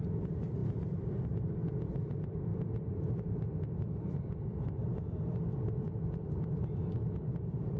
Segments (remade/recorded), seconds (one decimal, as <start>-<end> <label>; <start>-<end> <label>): 0.0-0.6 recorded; 0.6-1.2 remade; 1.2-2.5 recorded; 2.5-7.2 remade; 7.2-7.8 recorded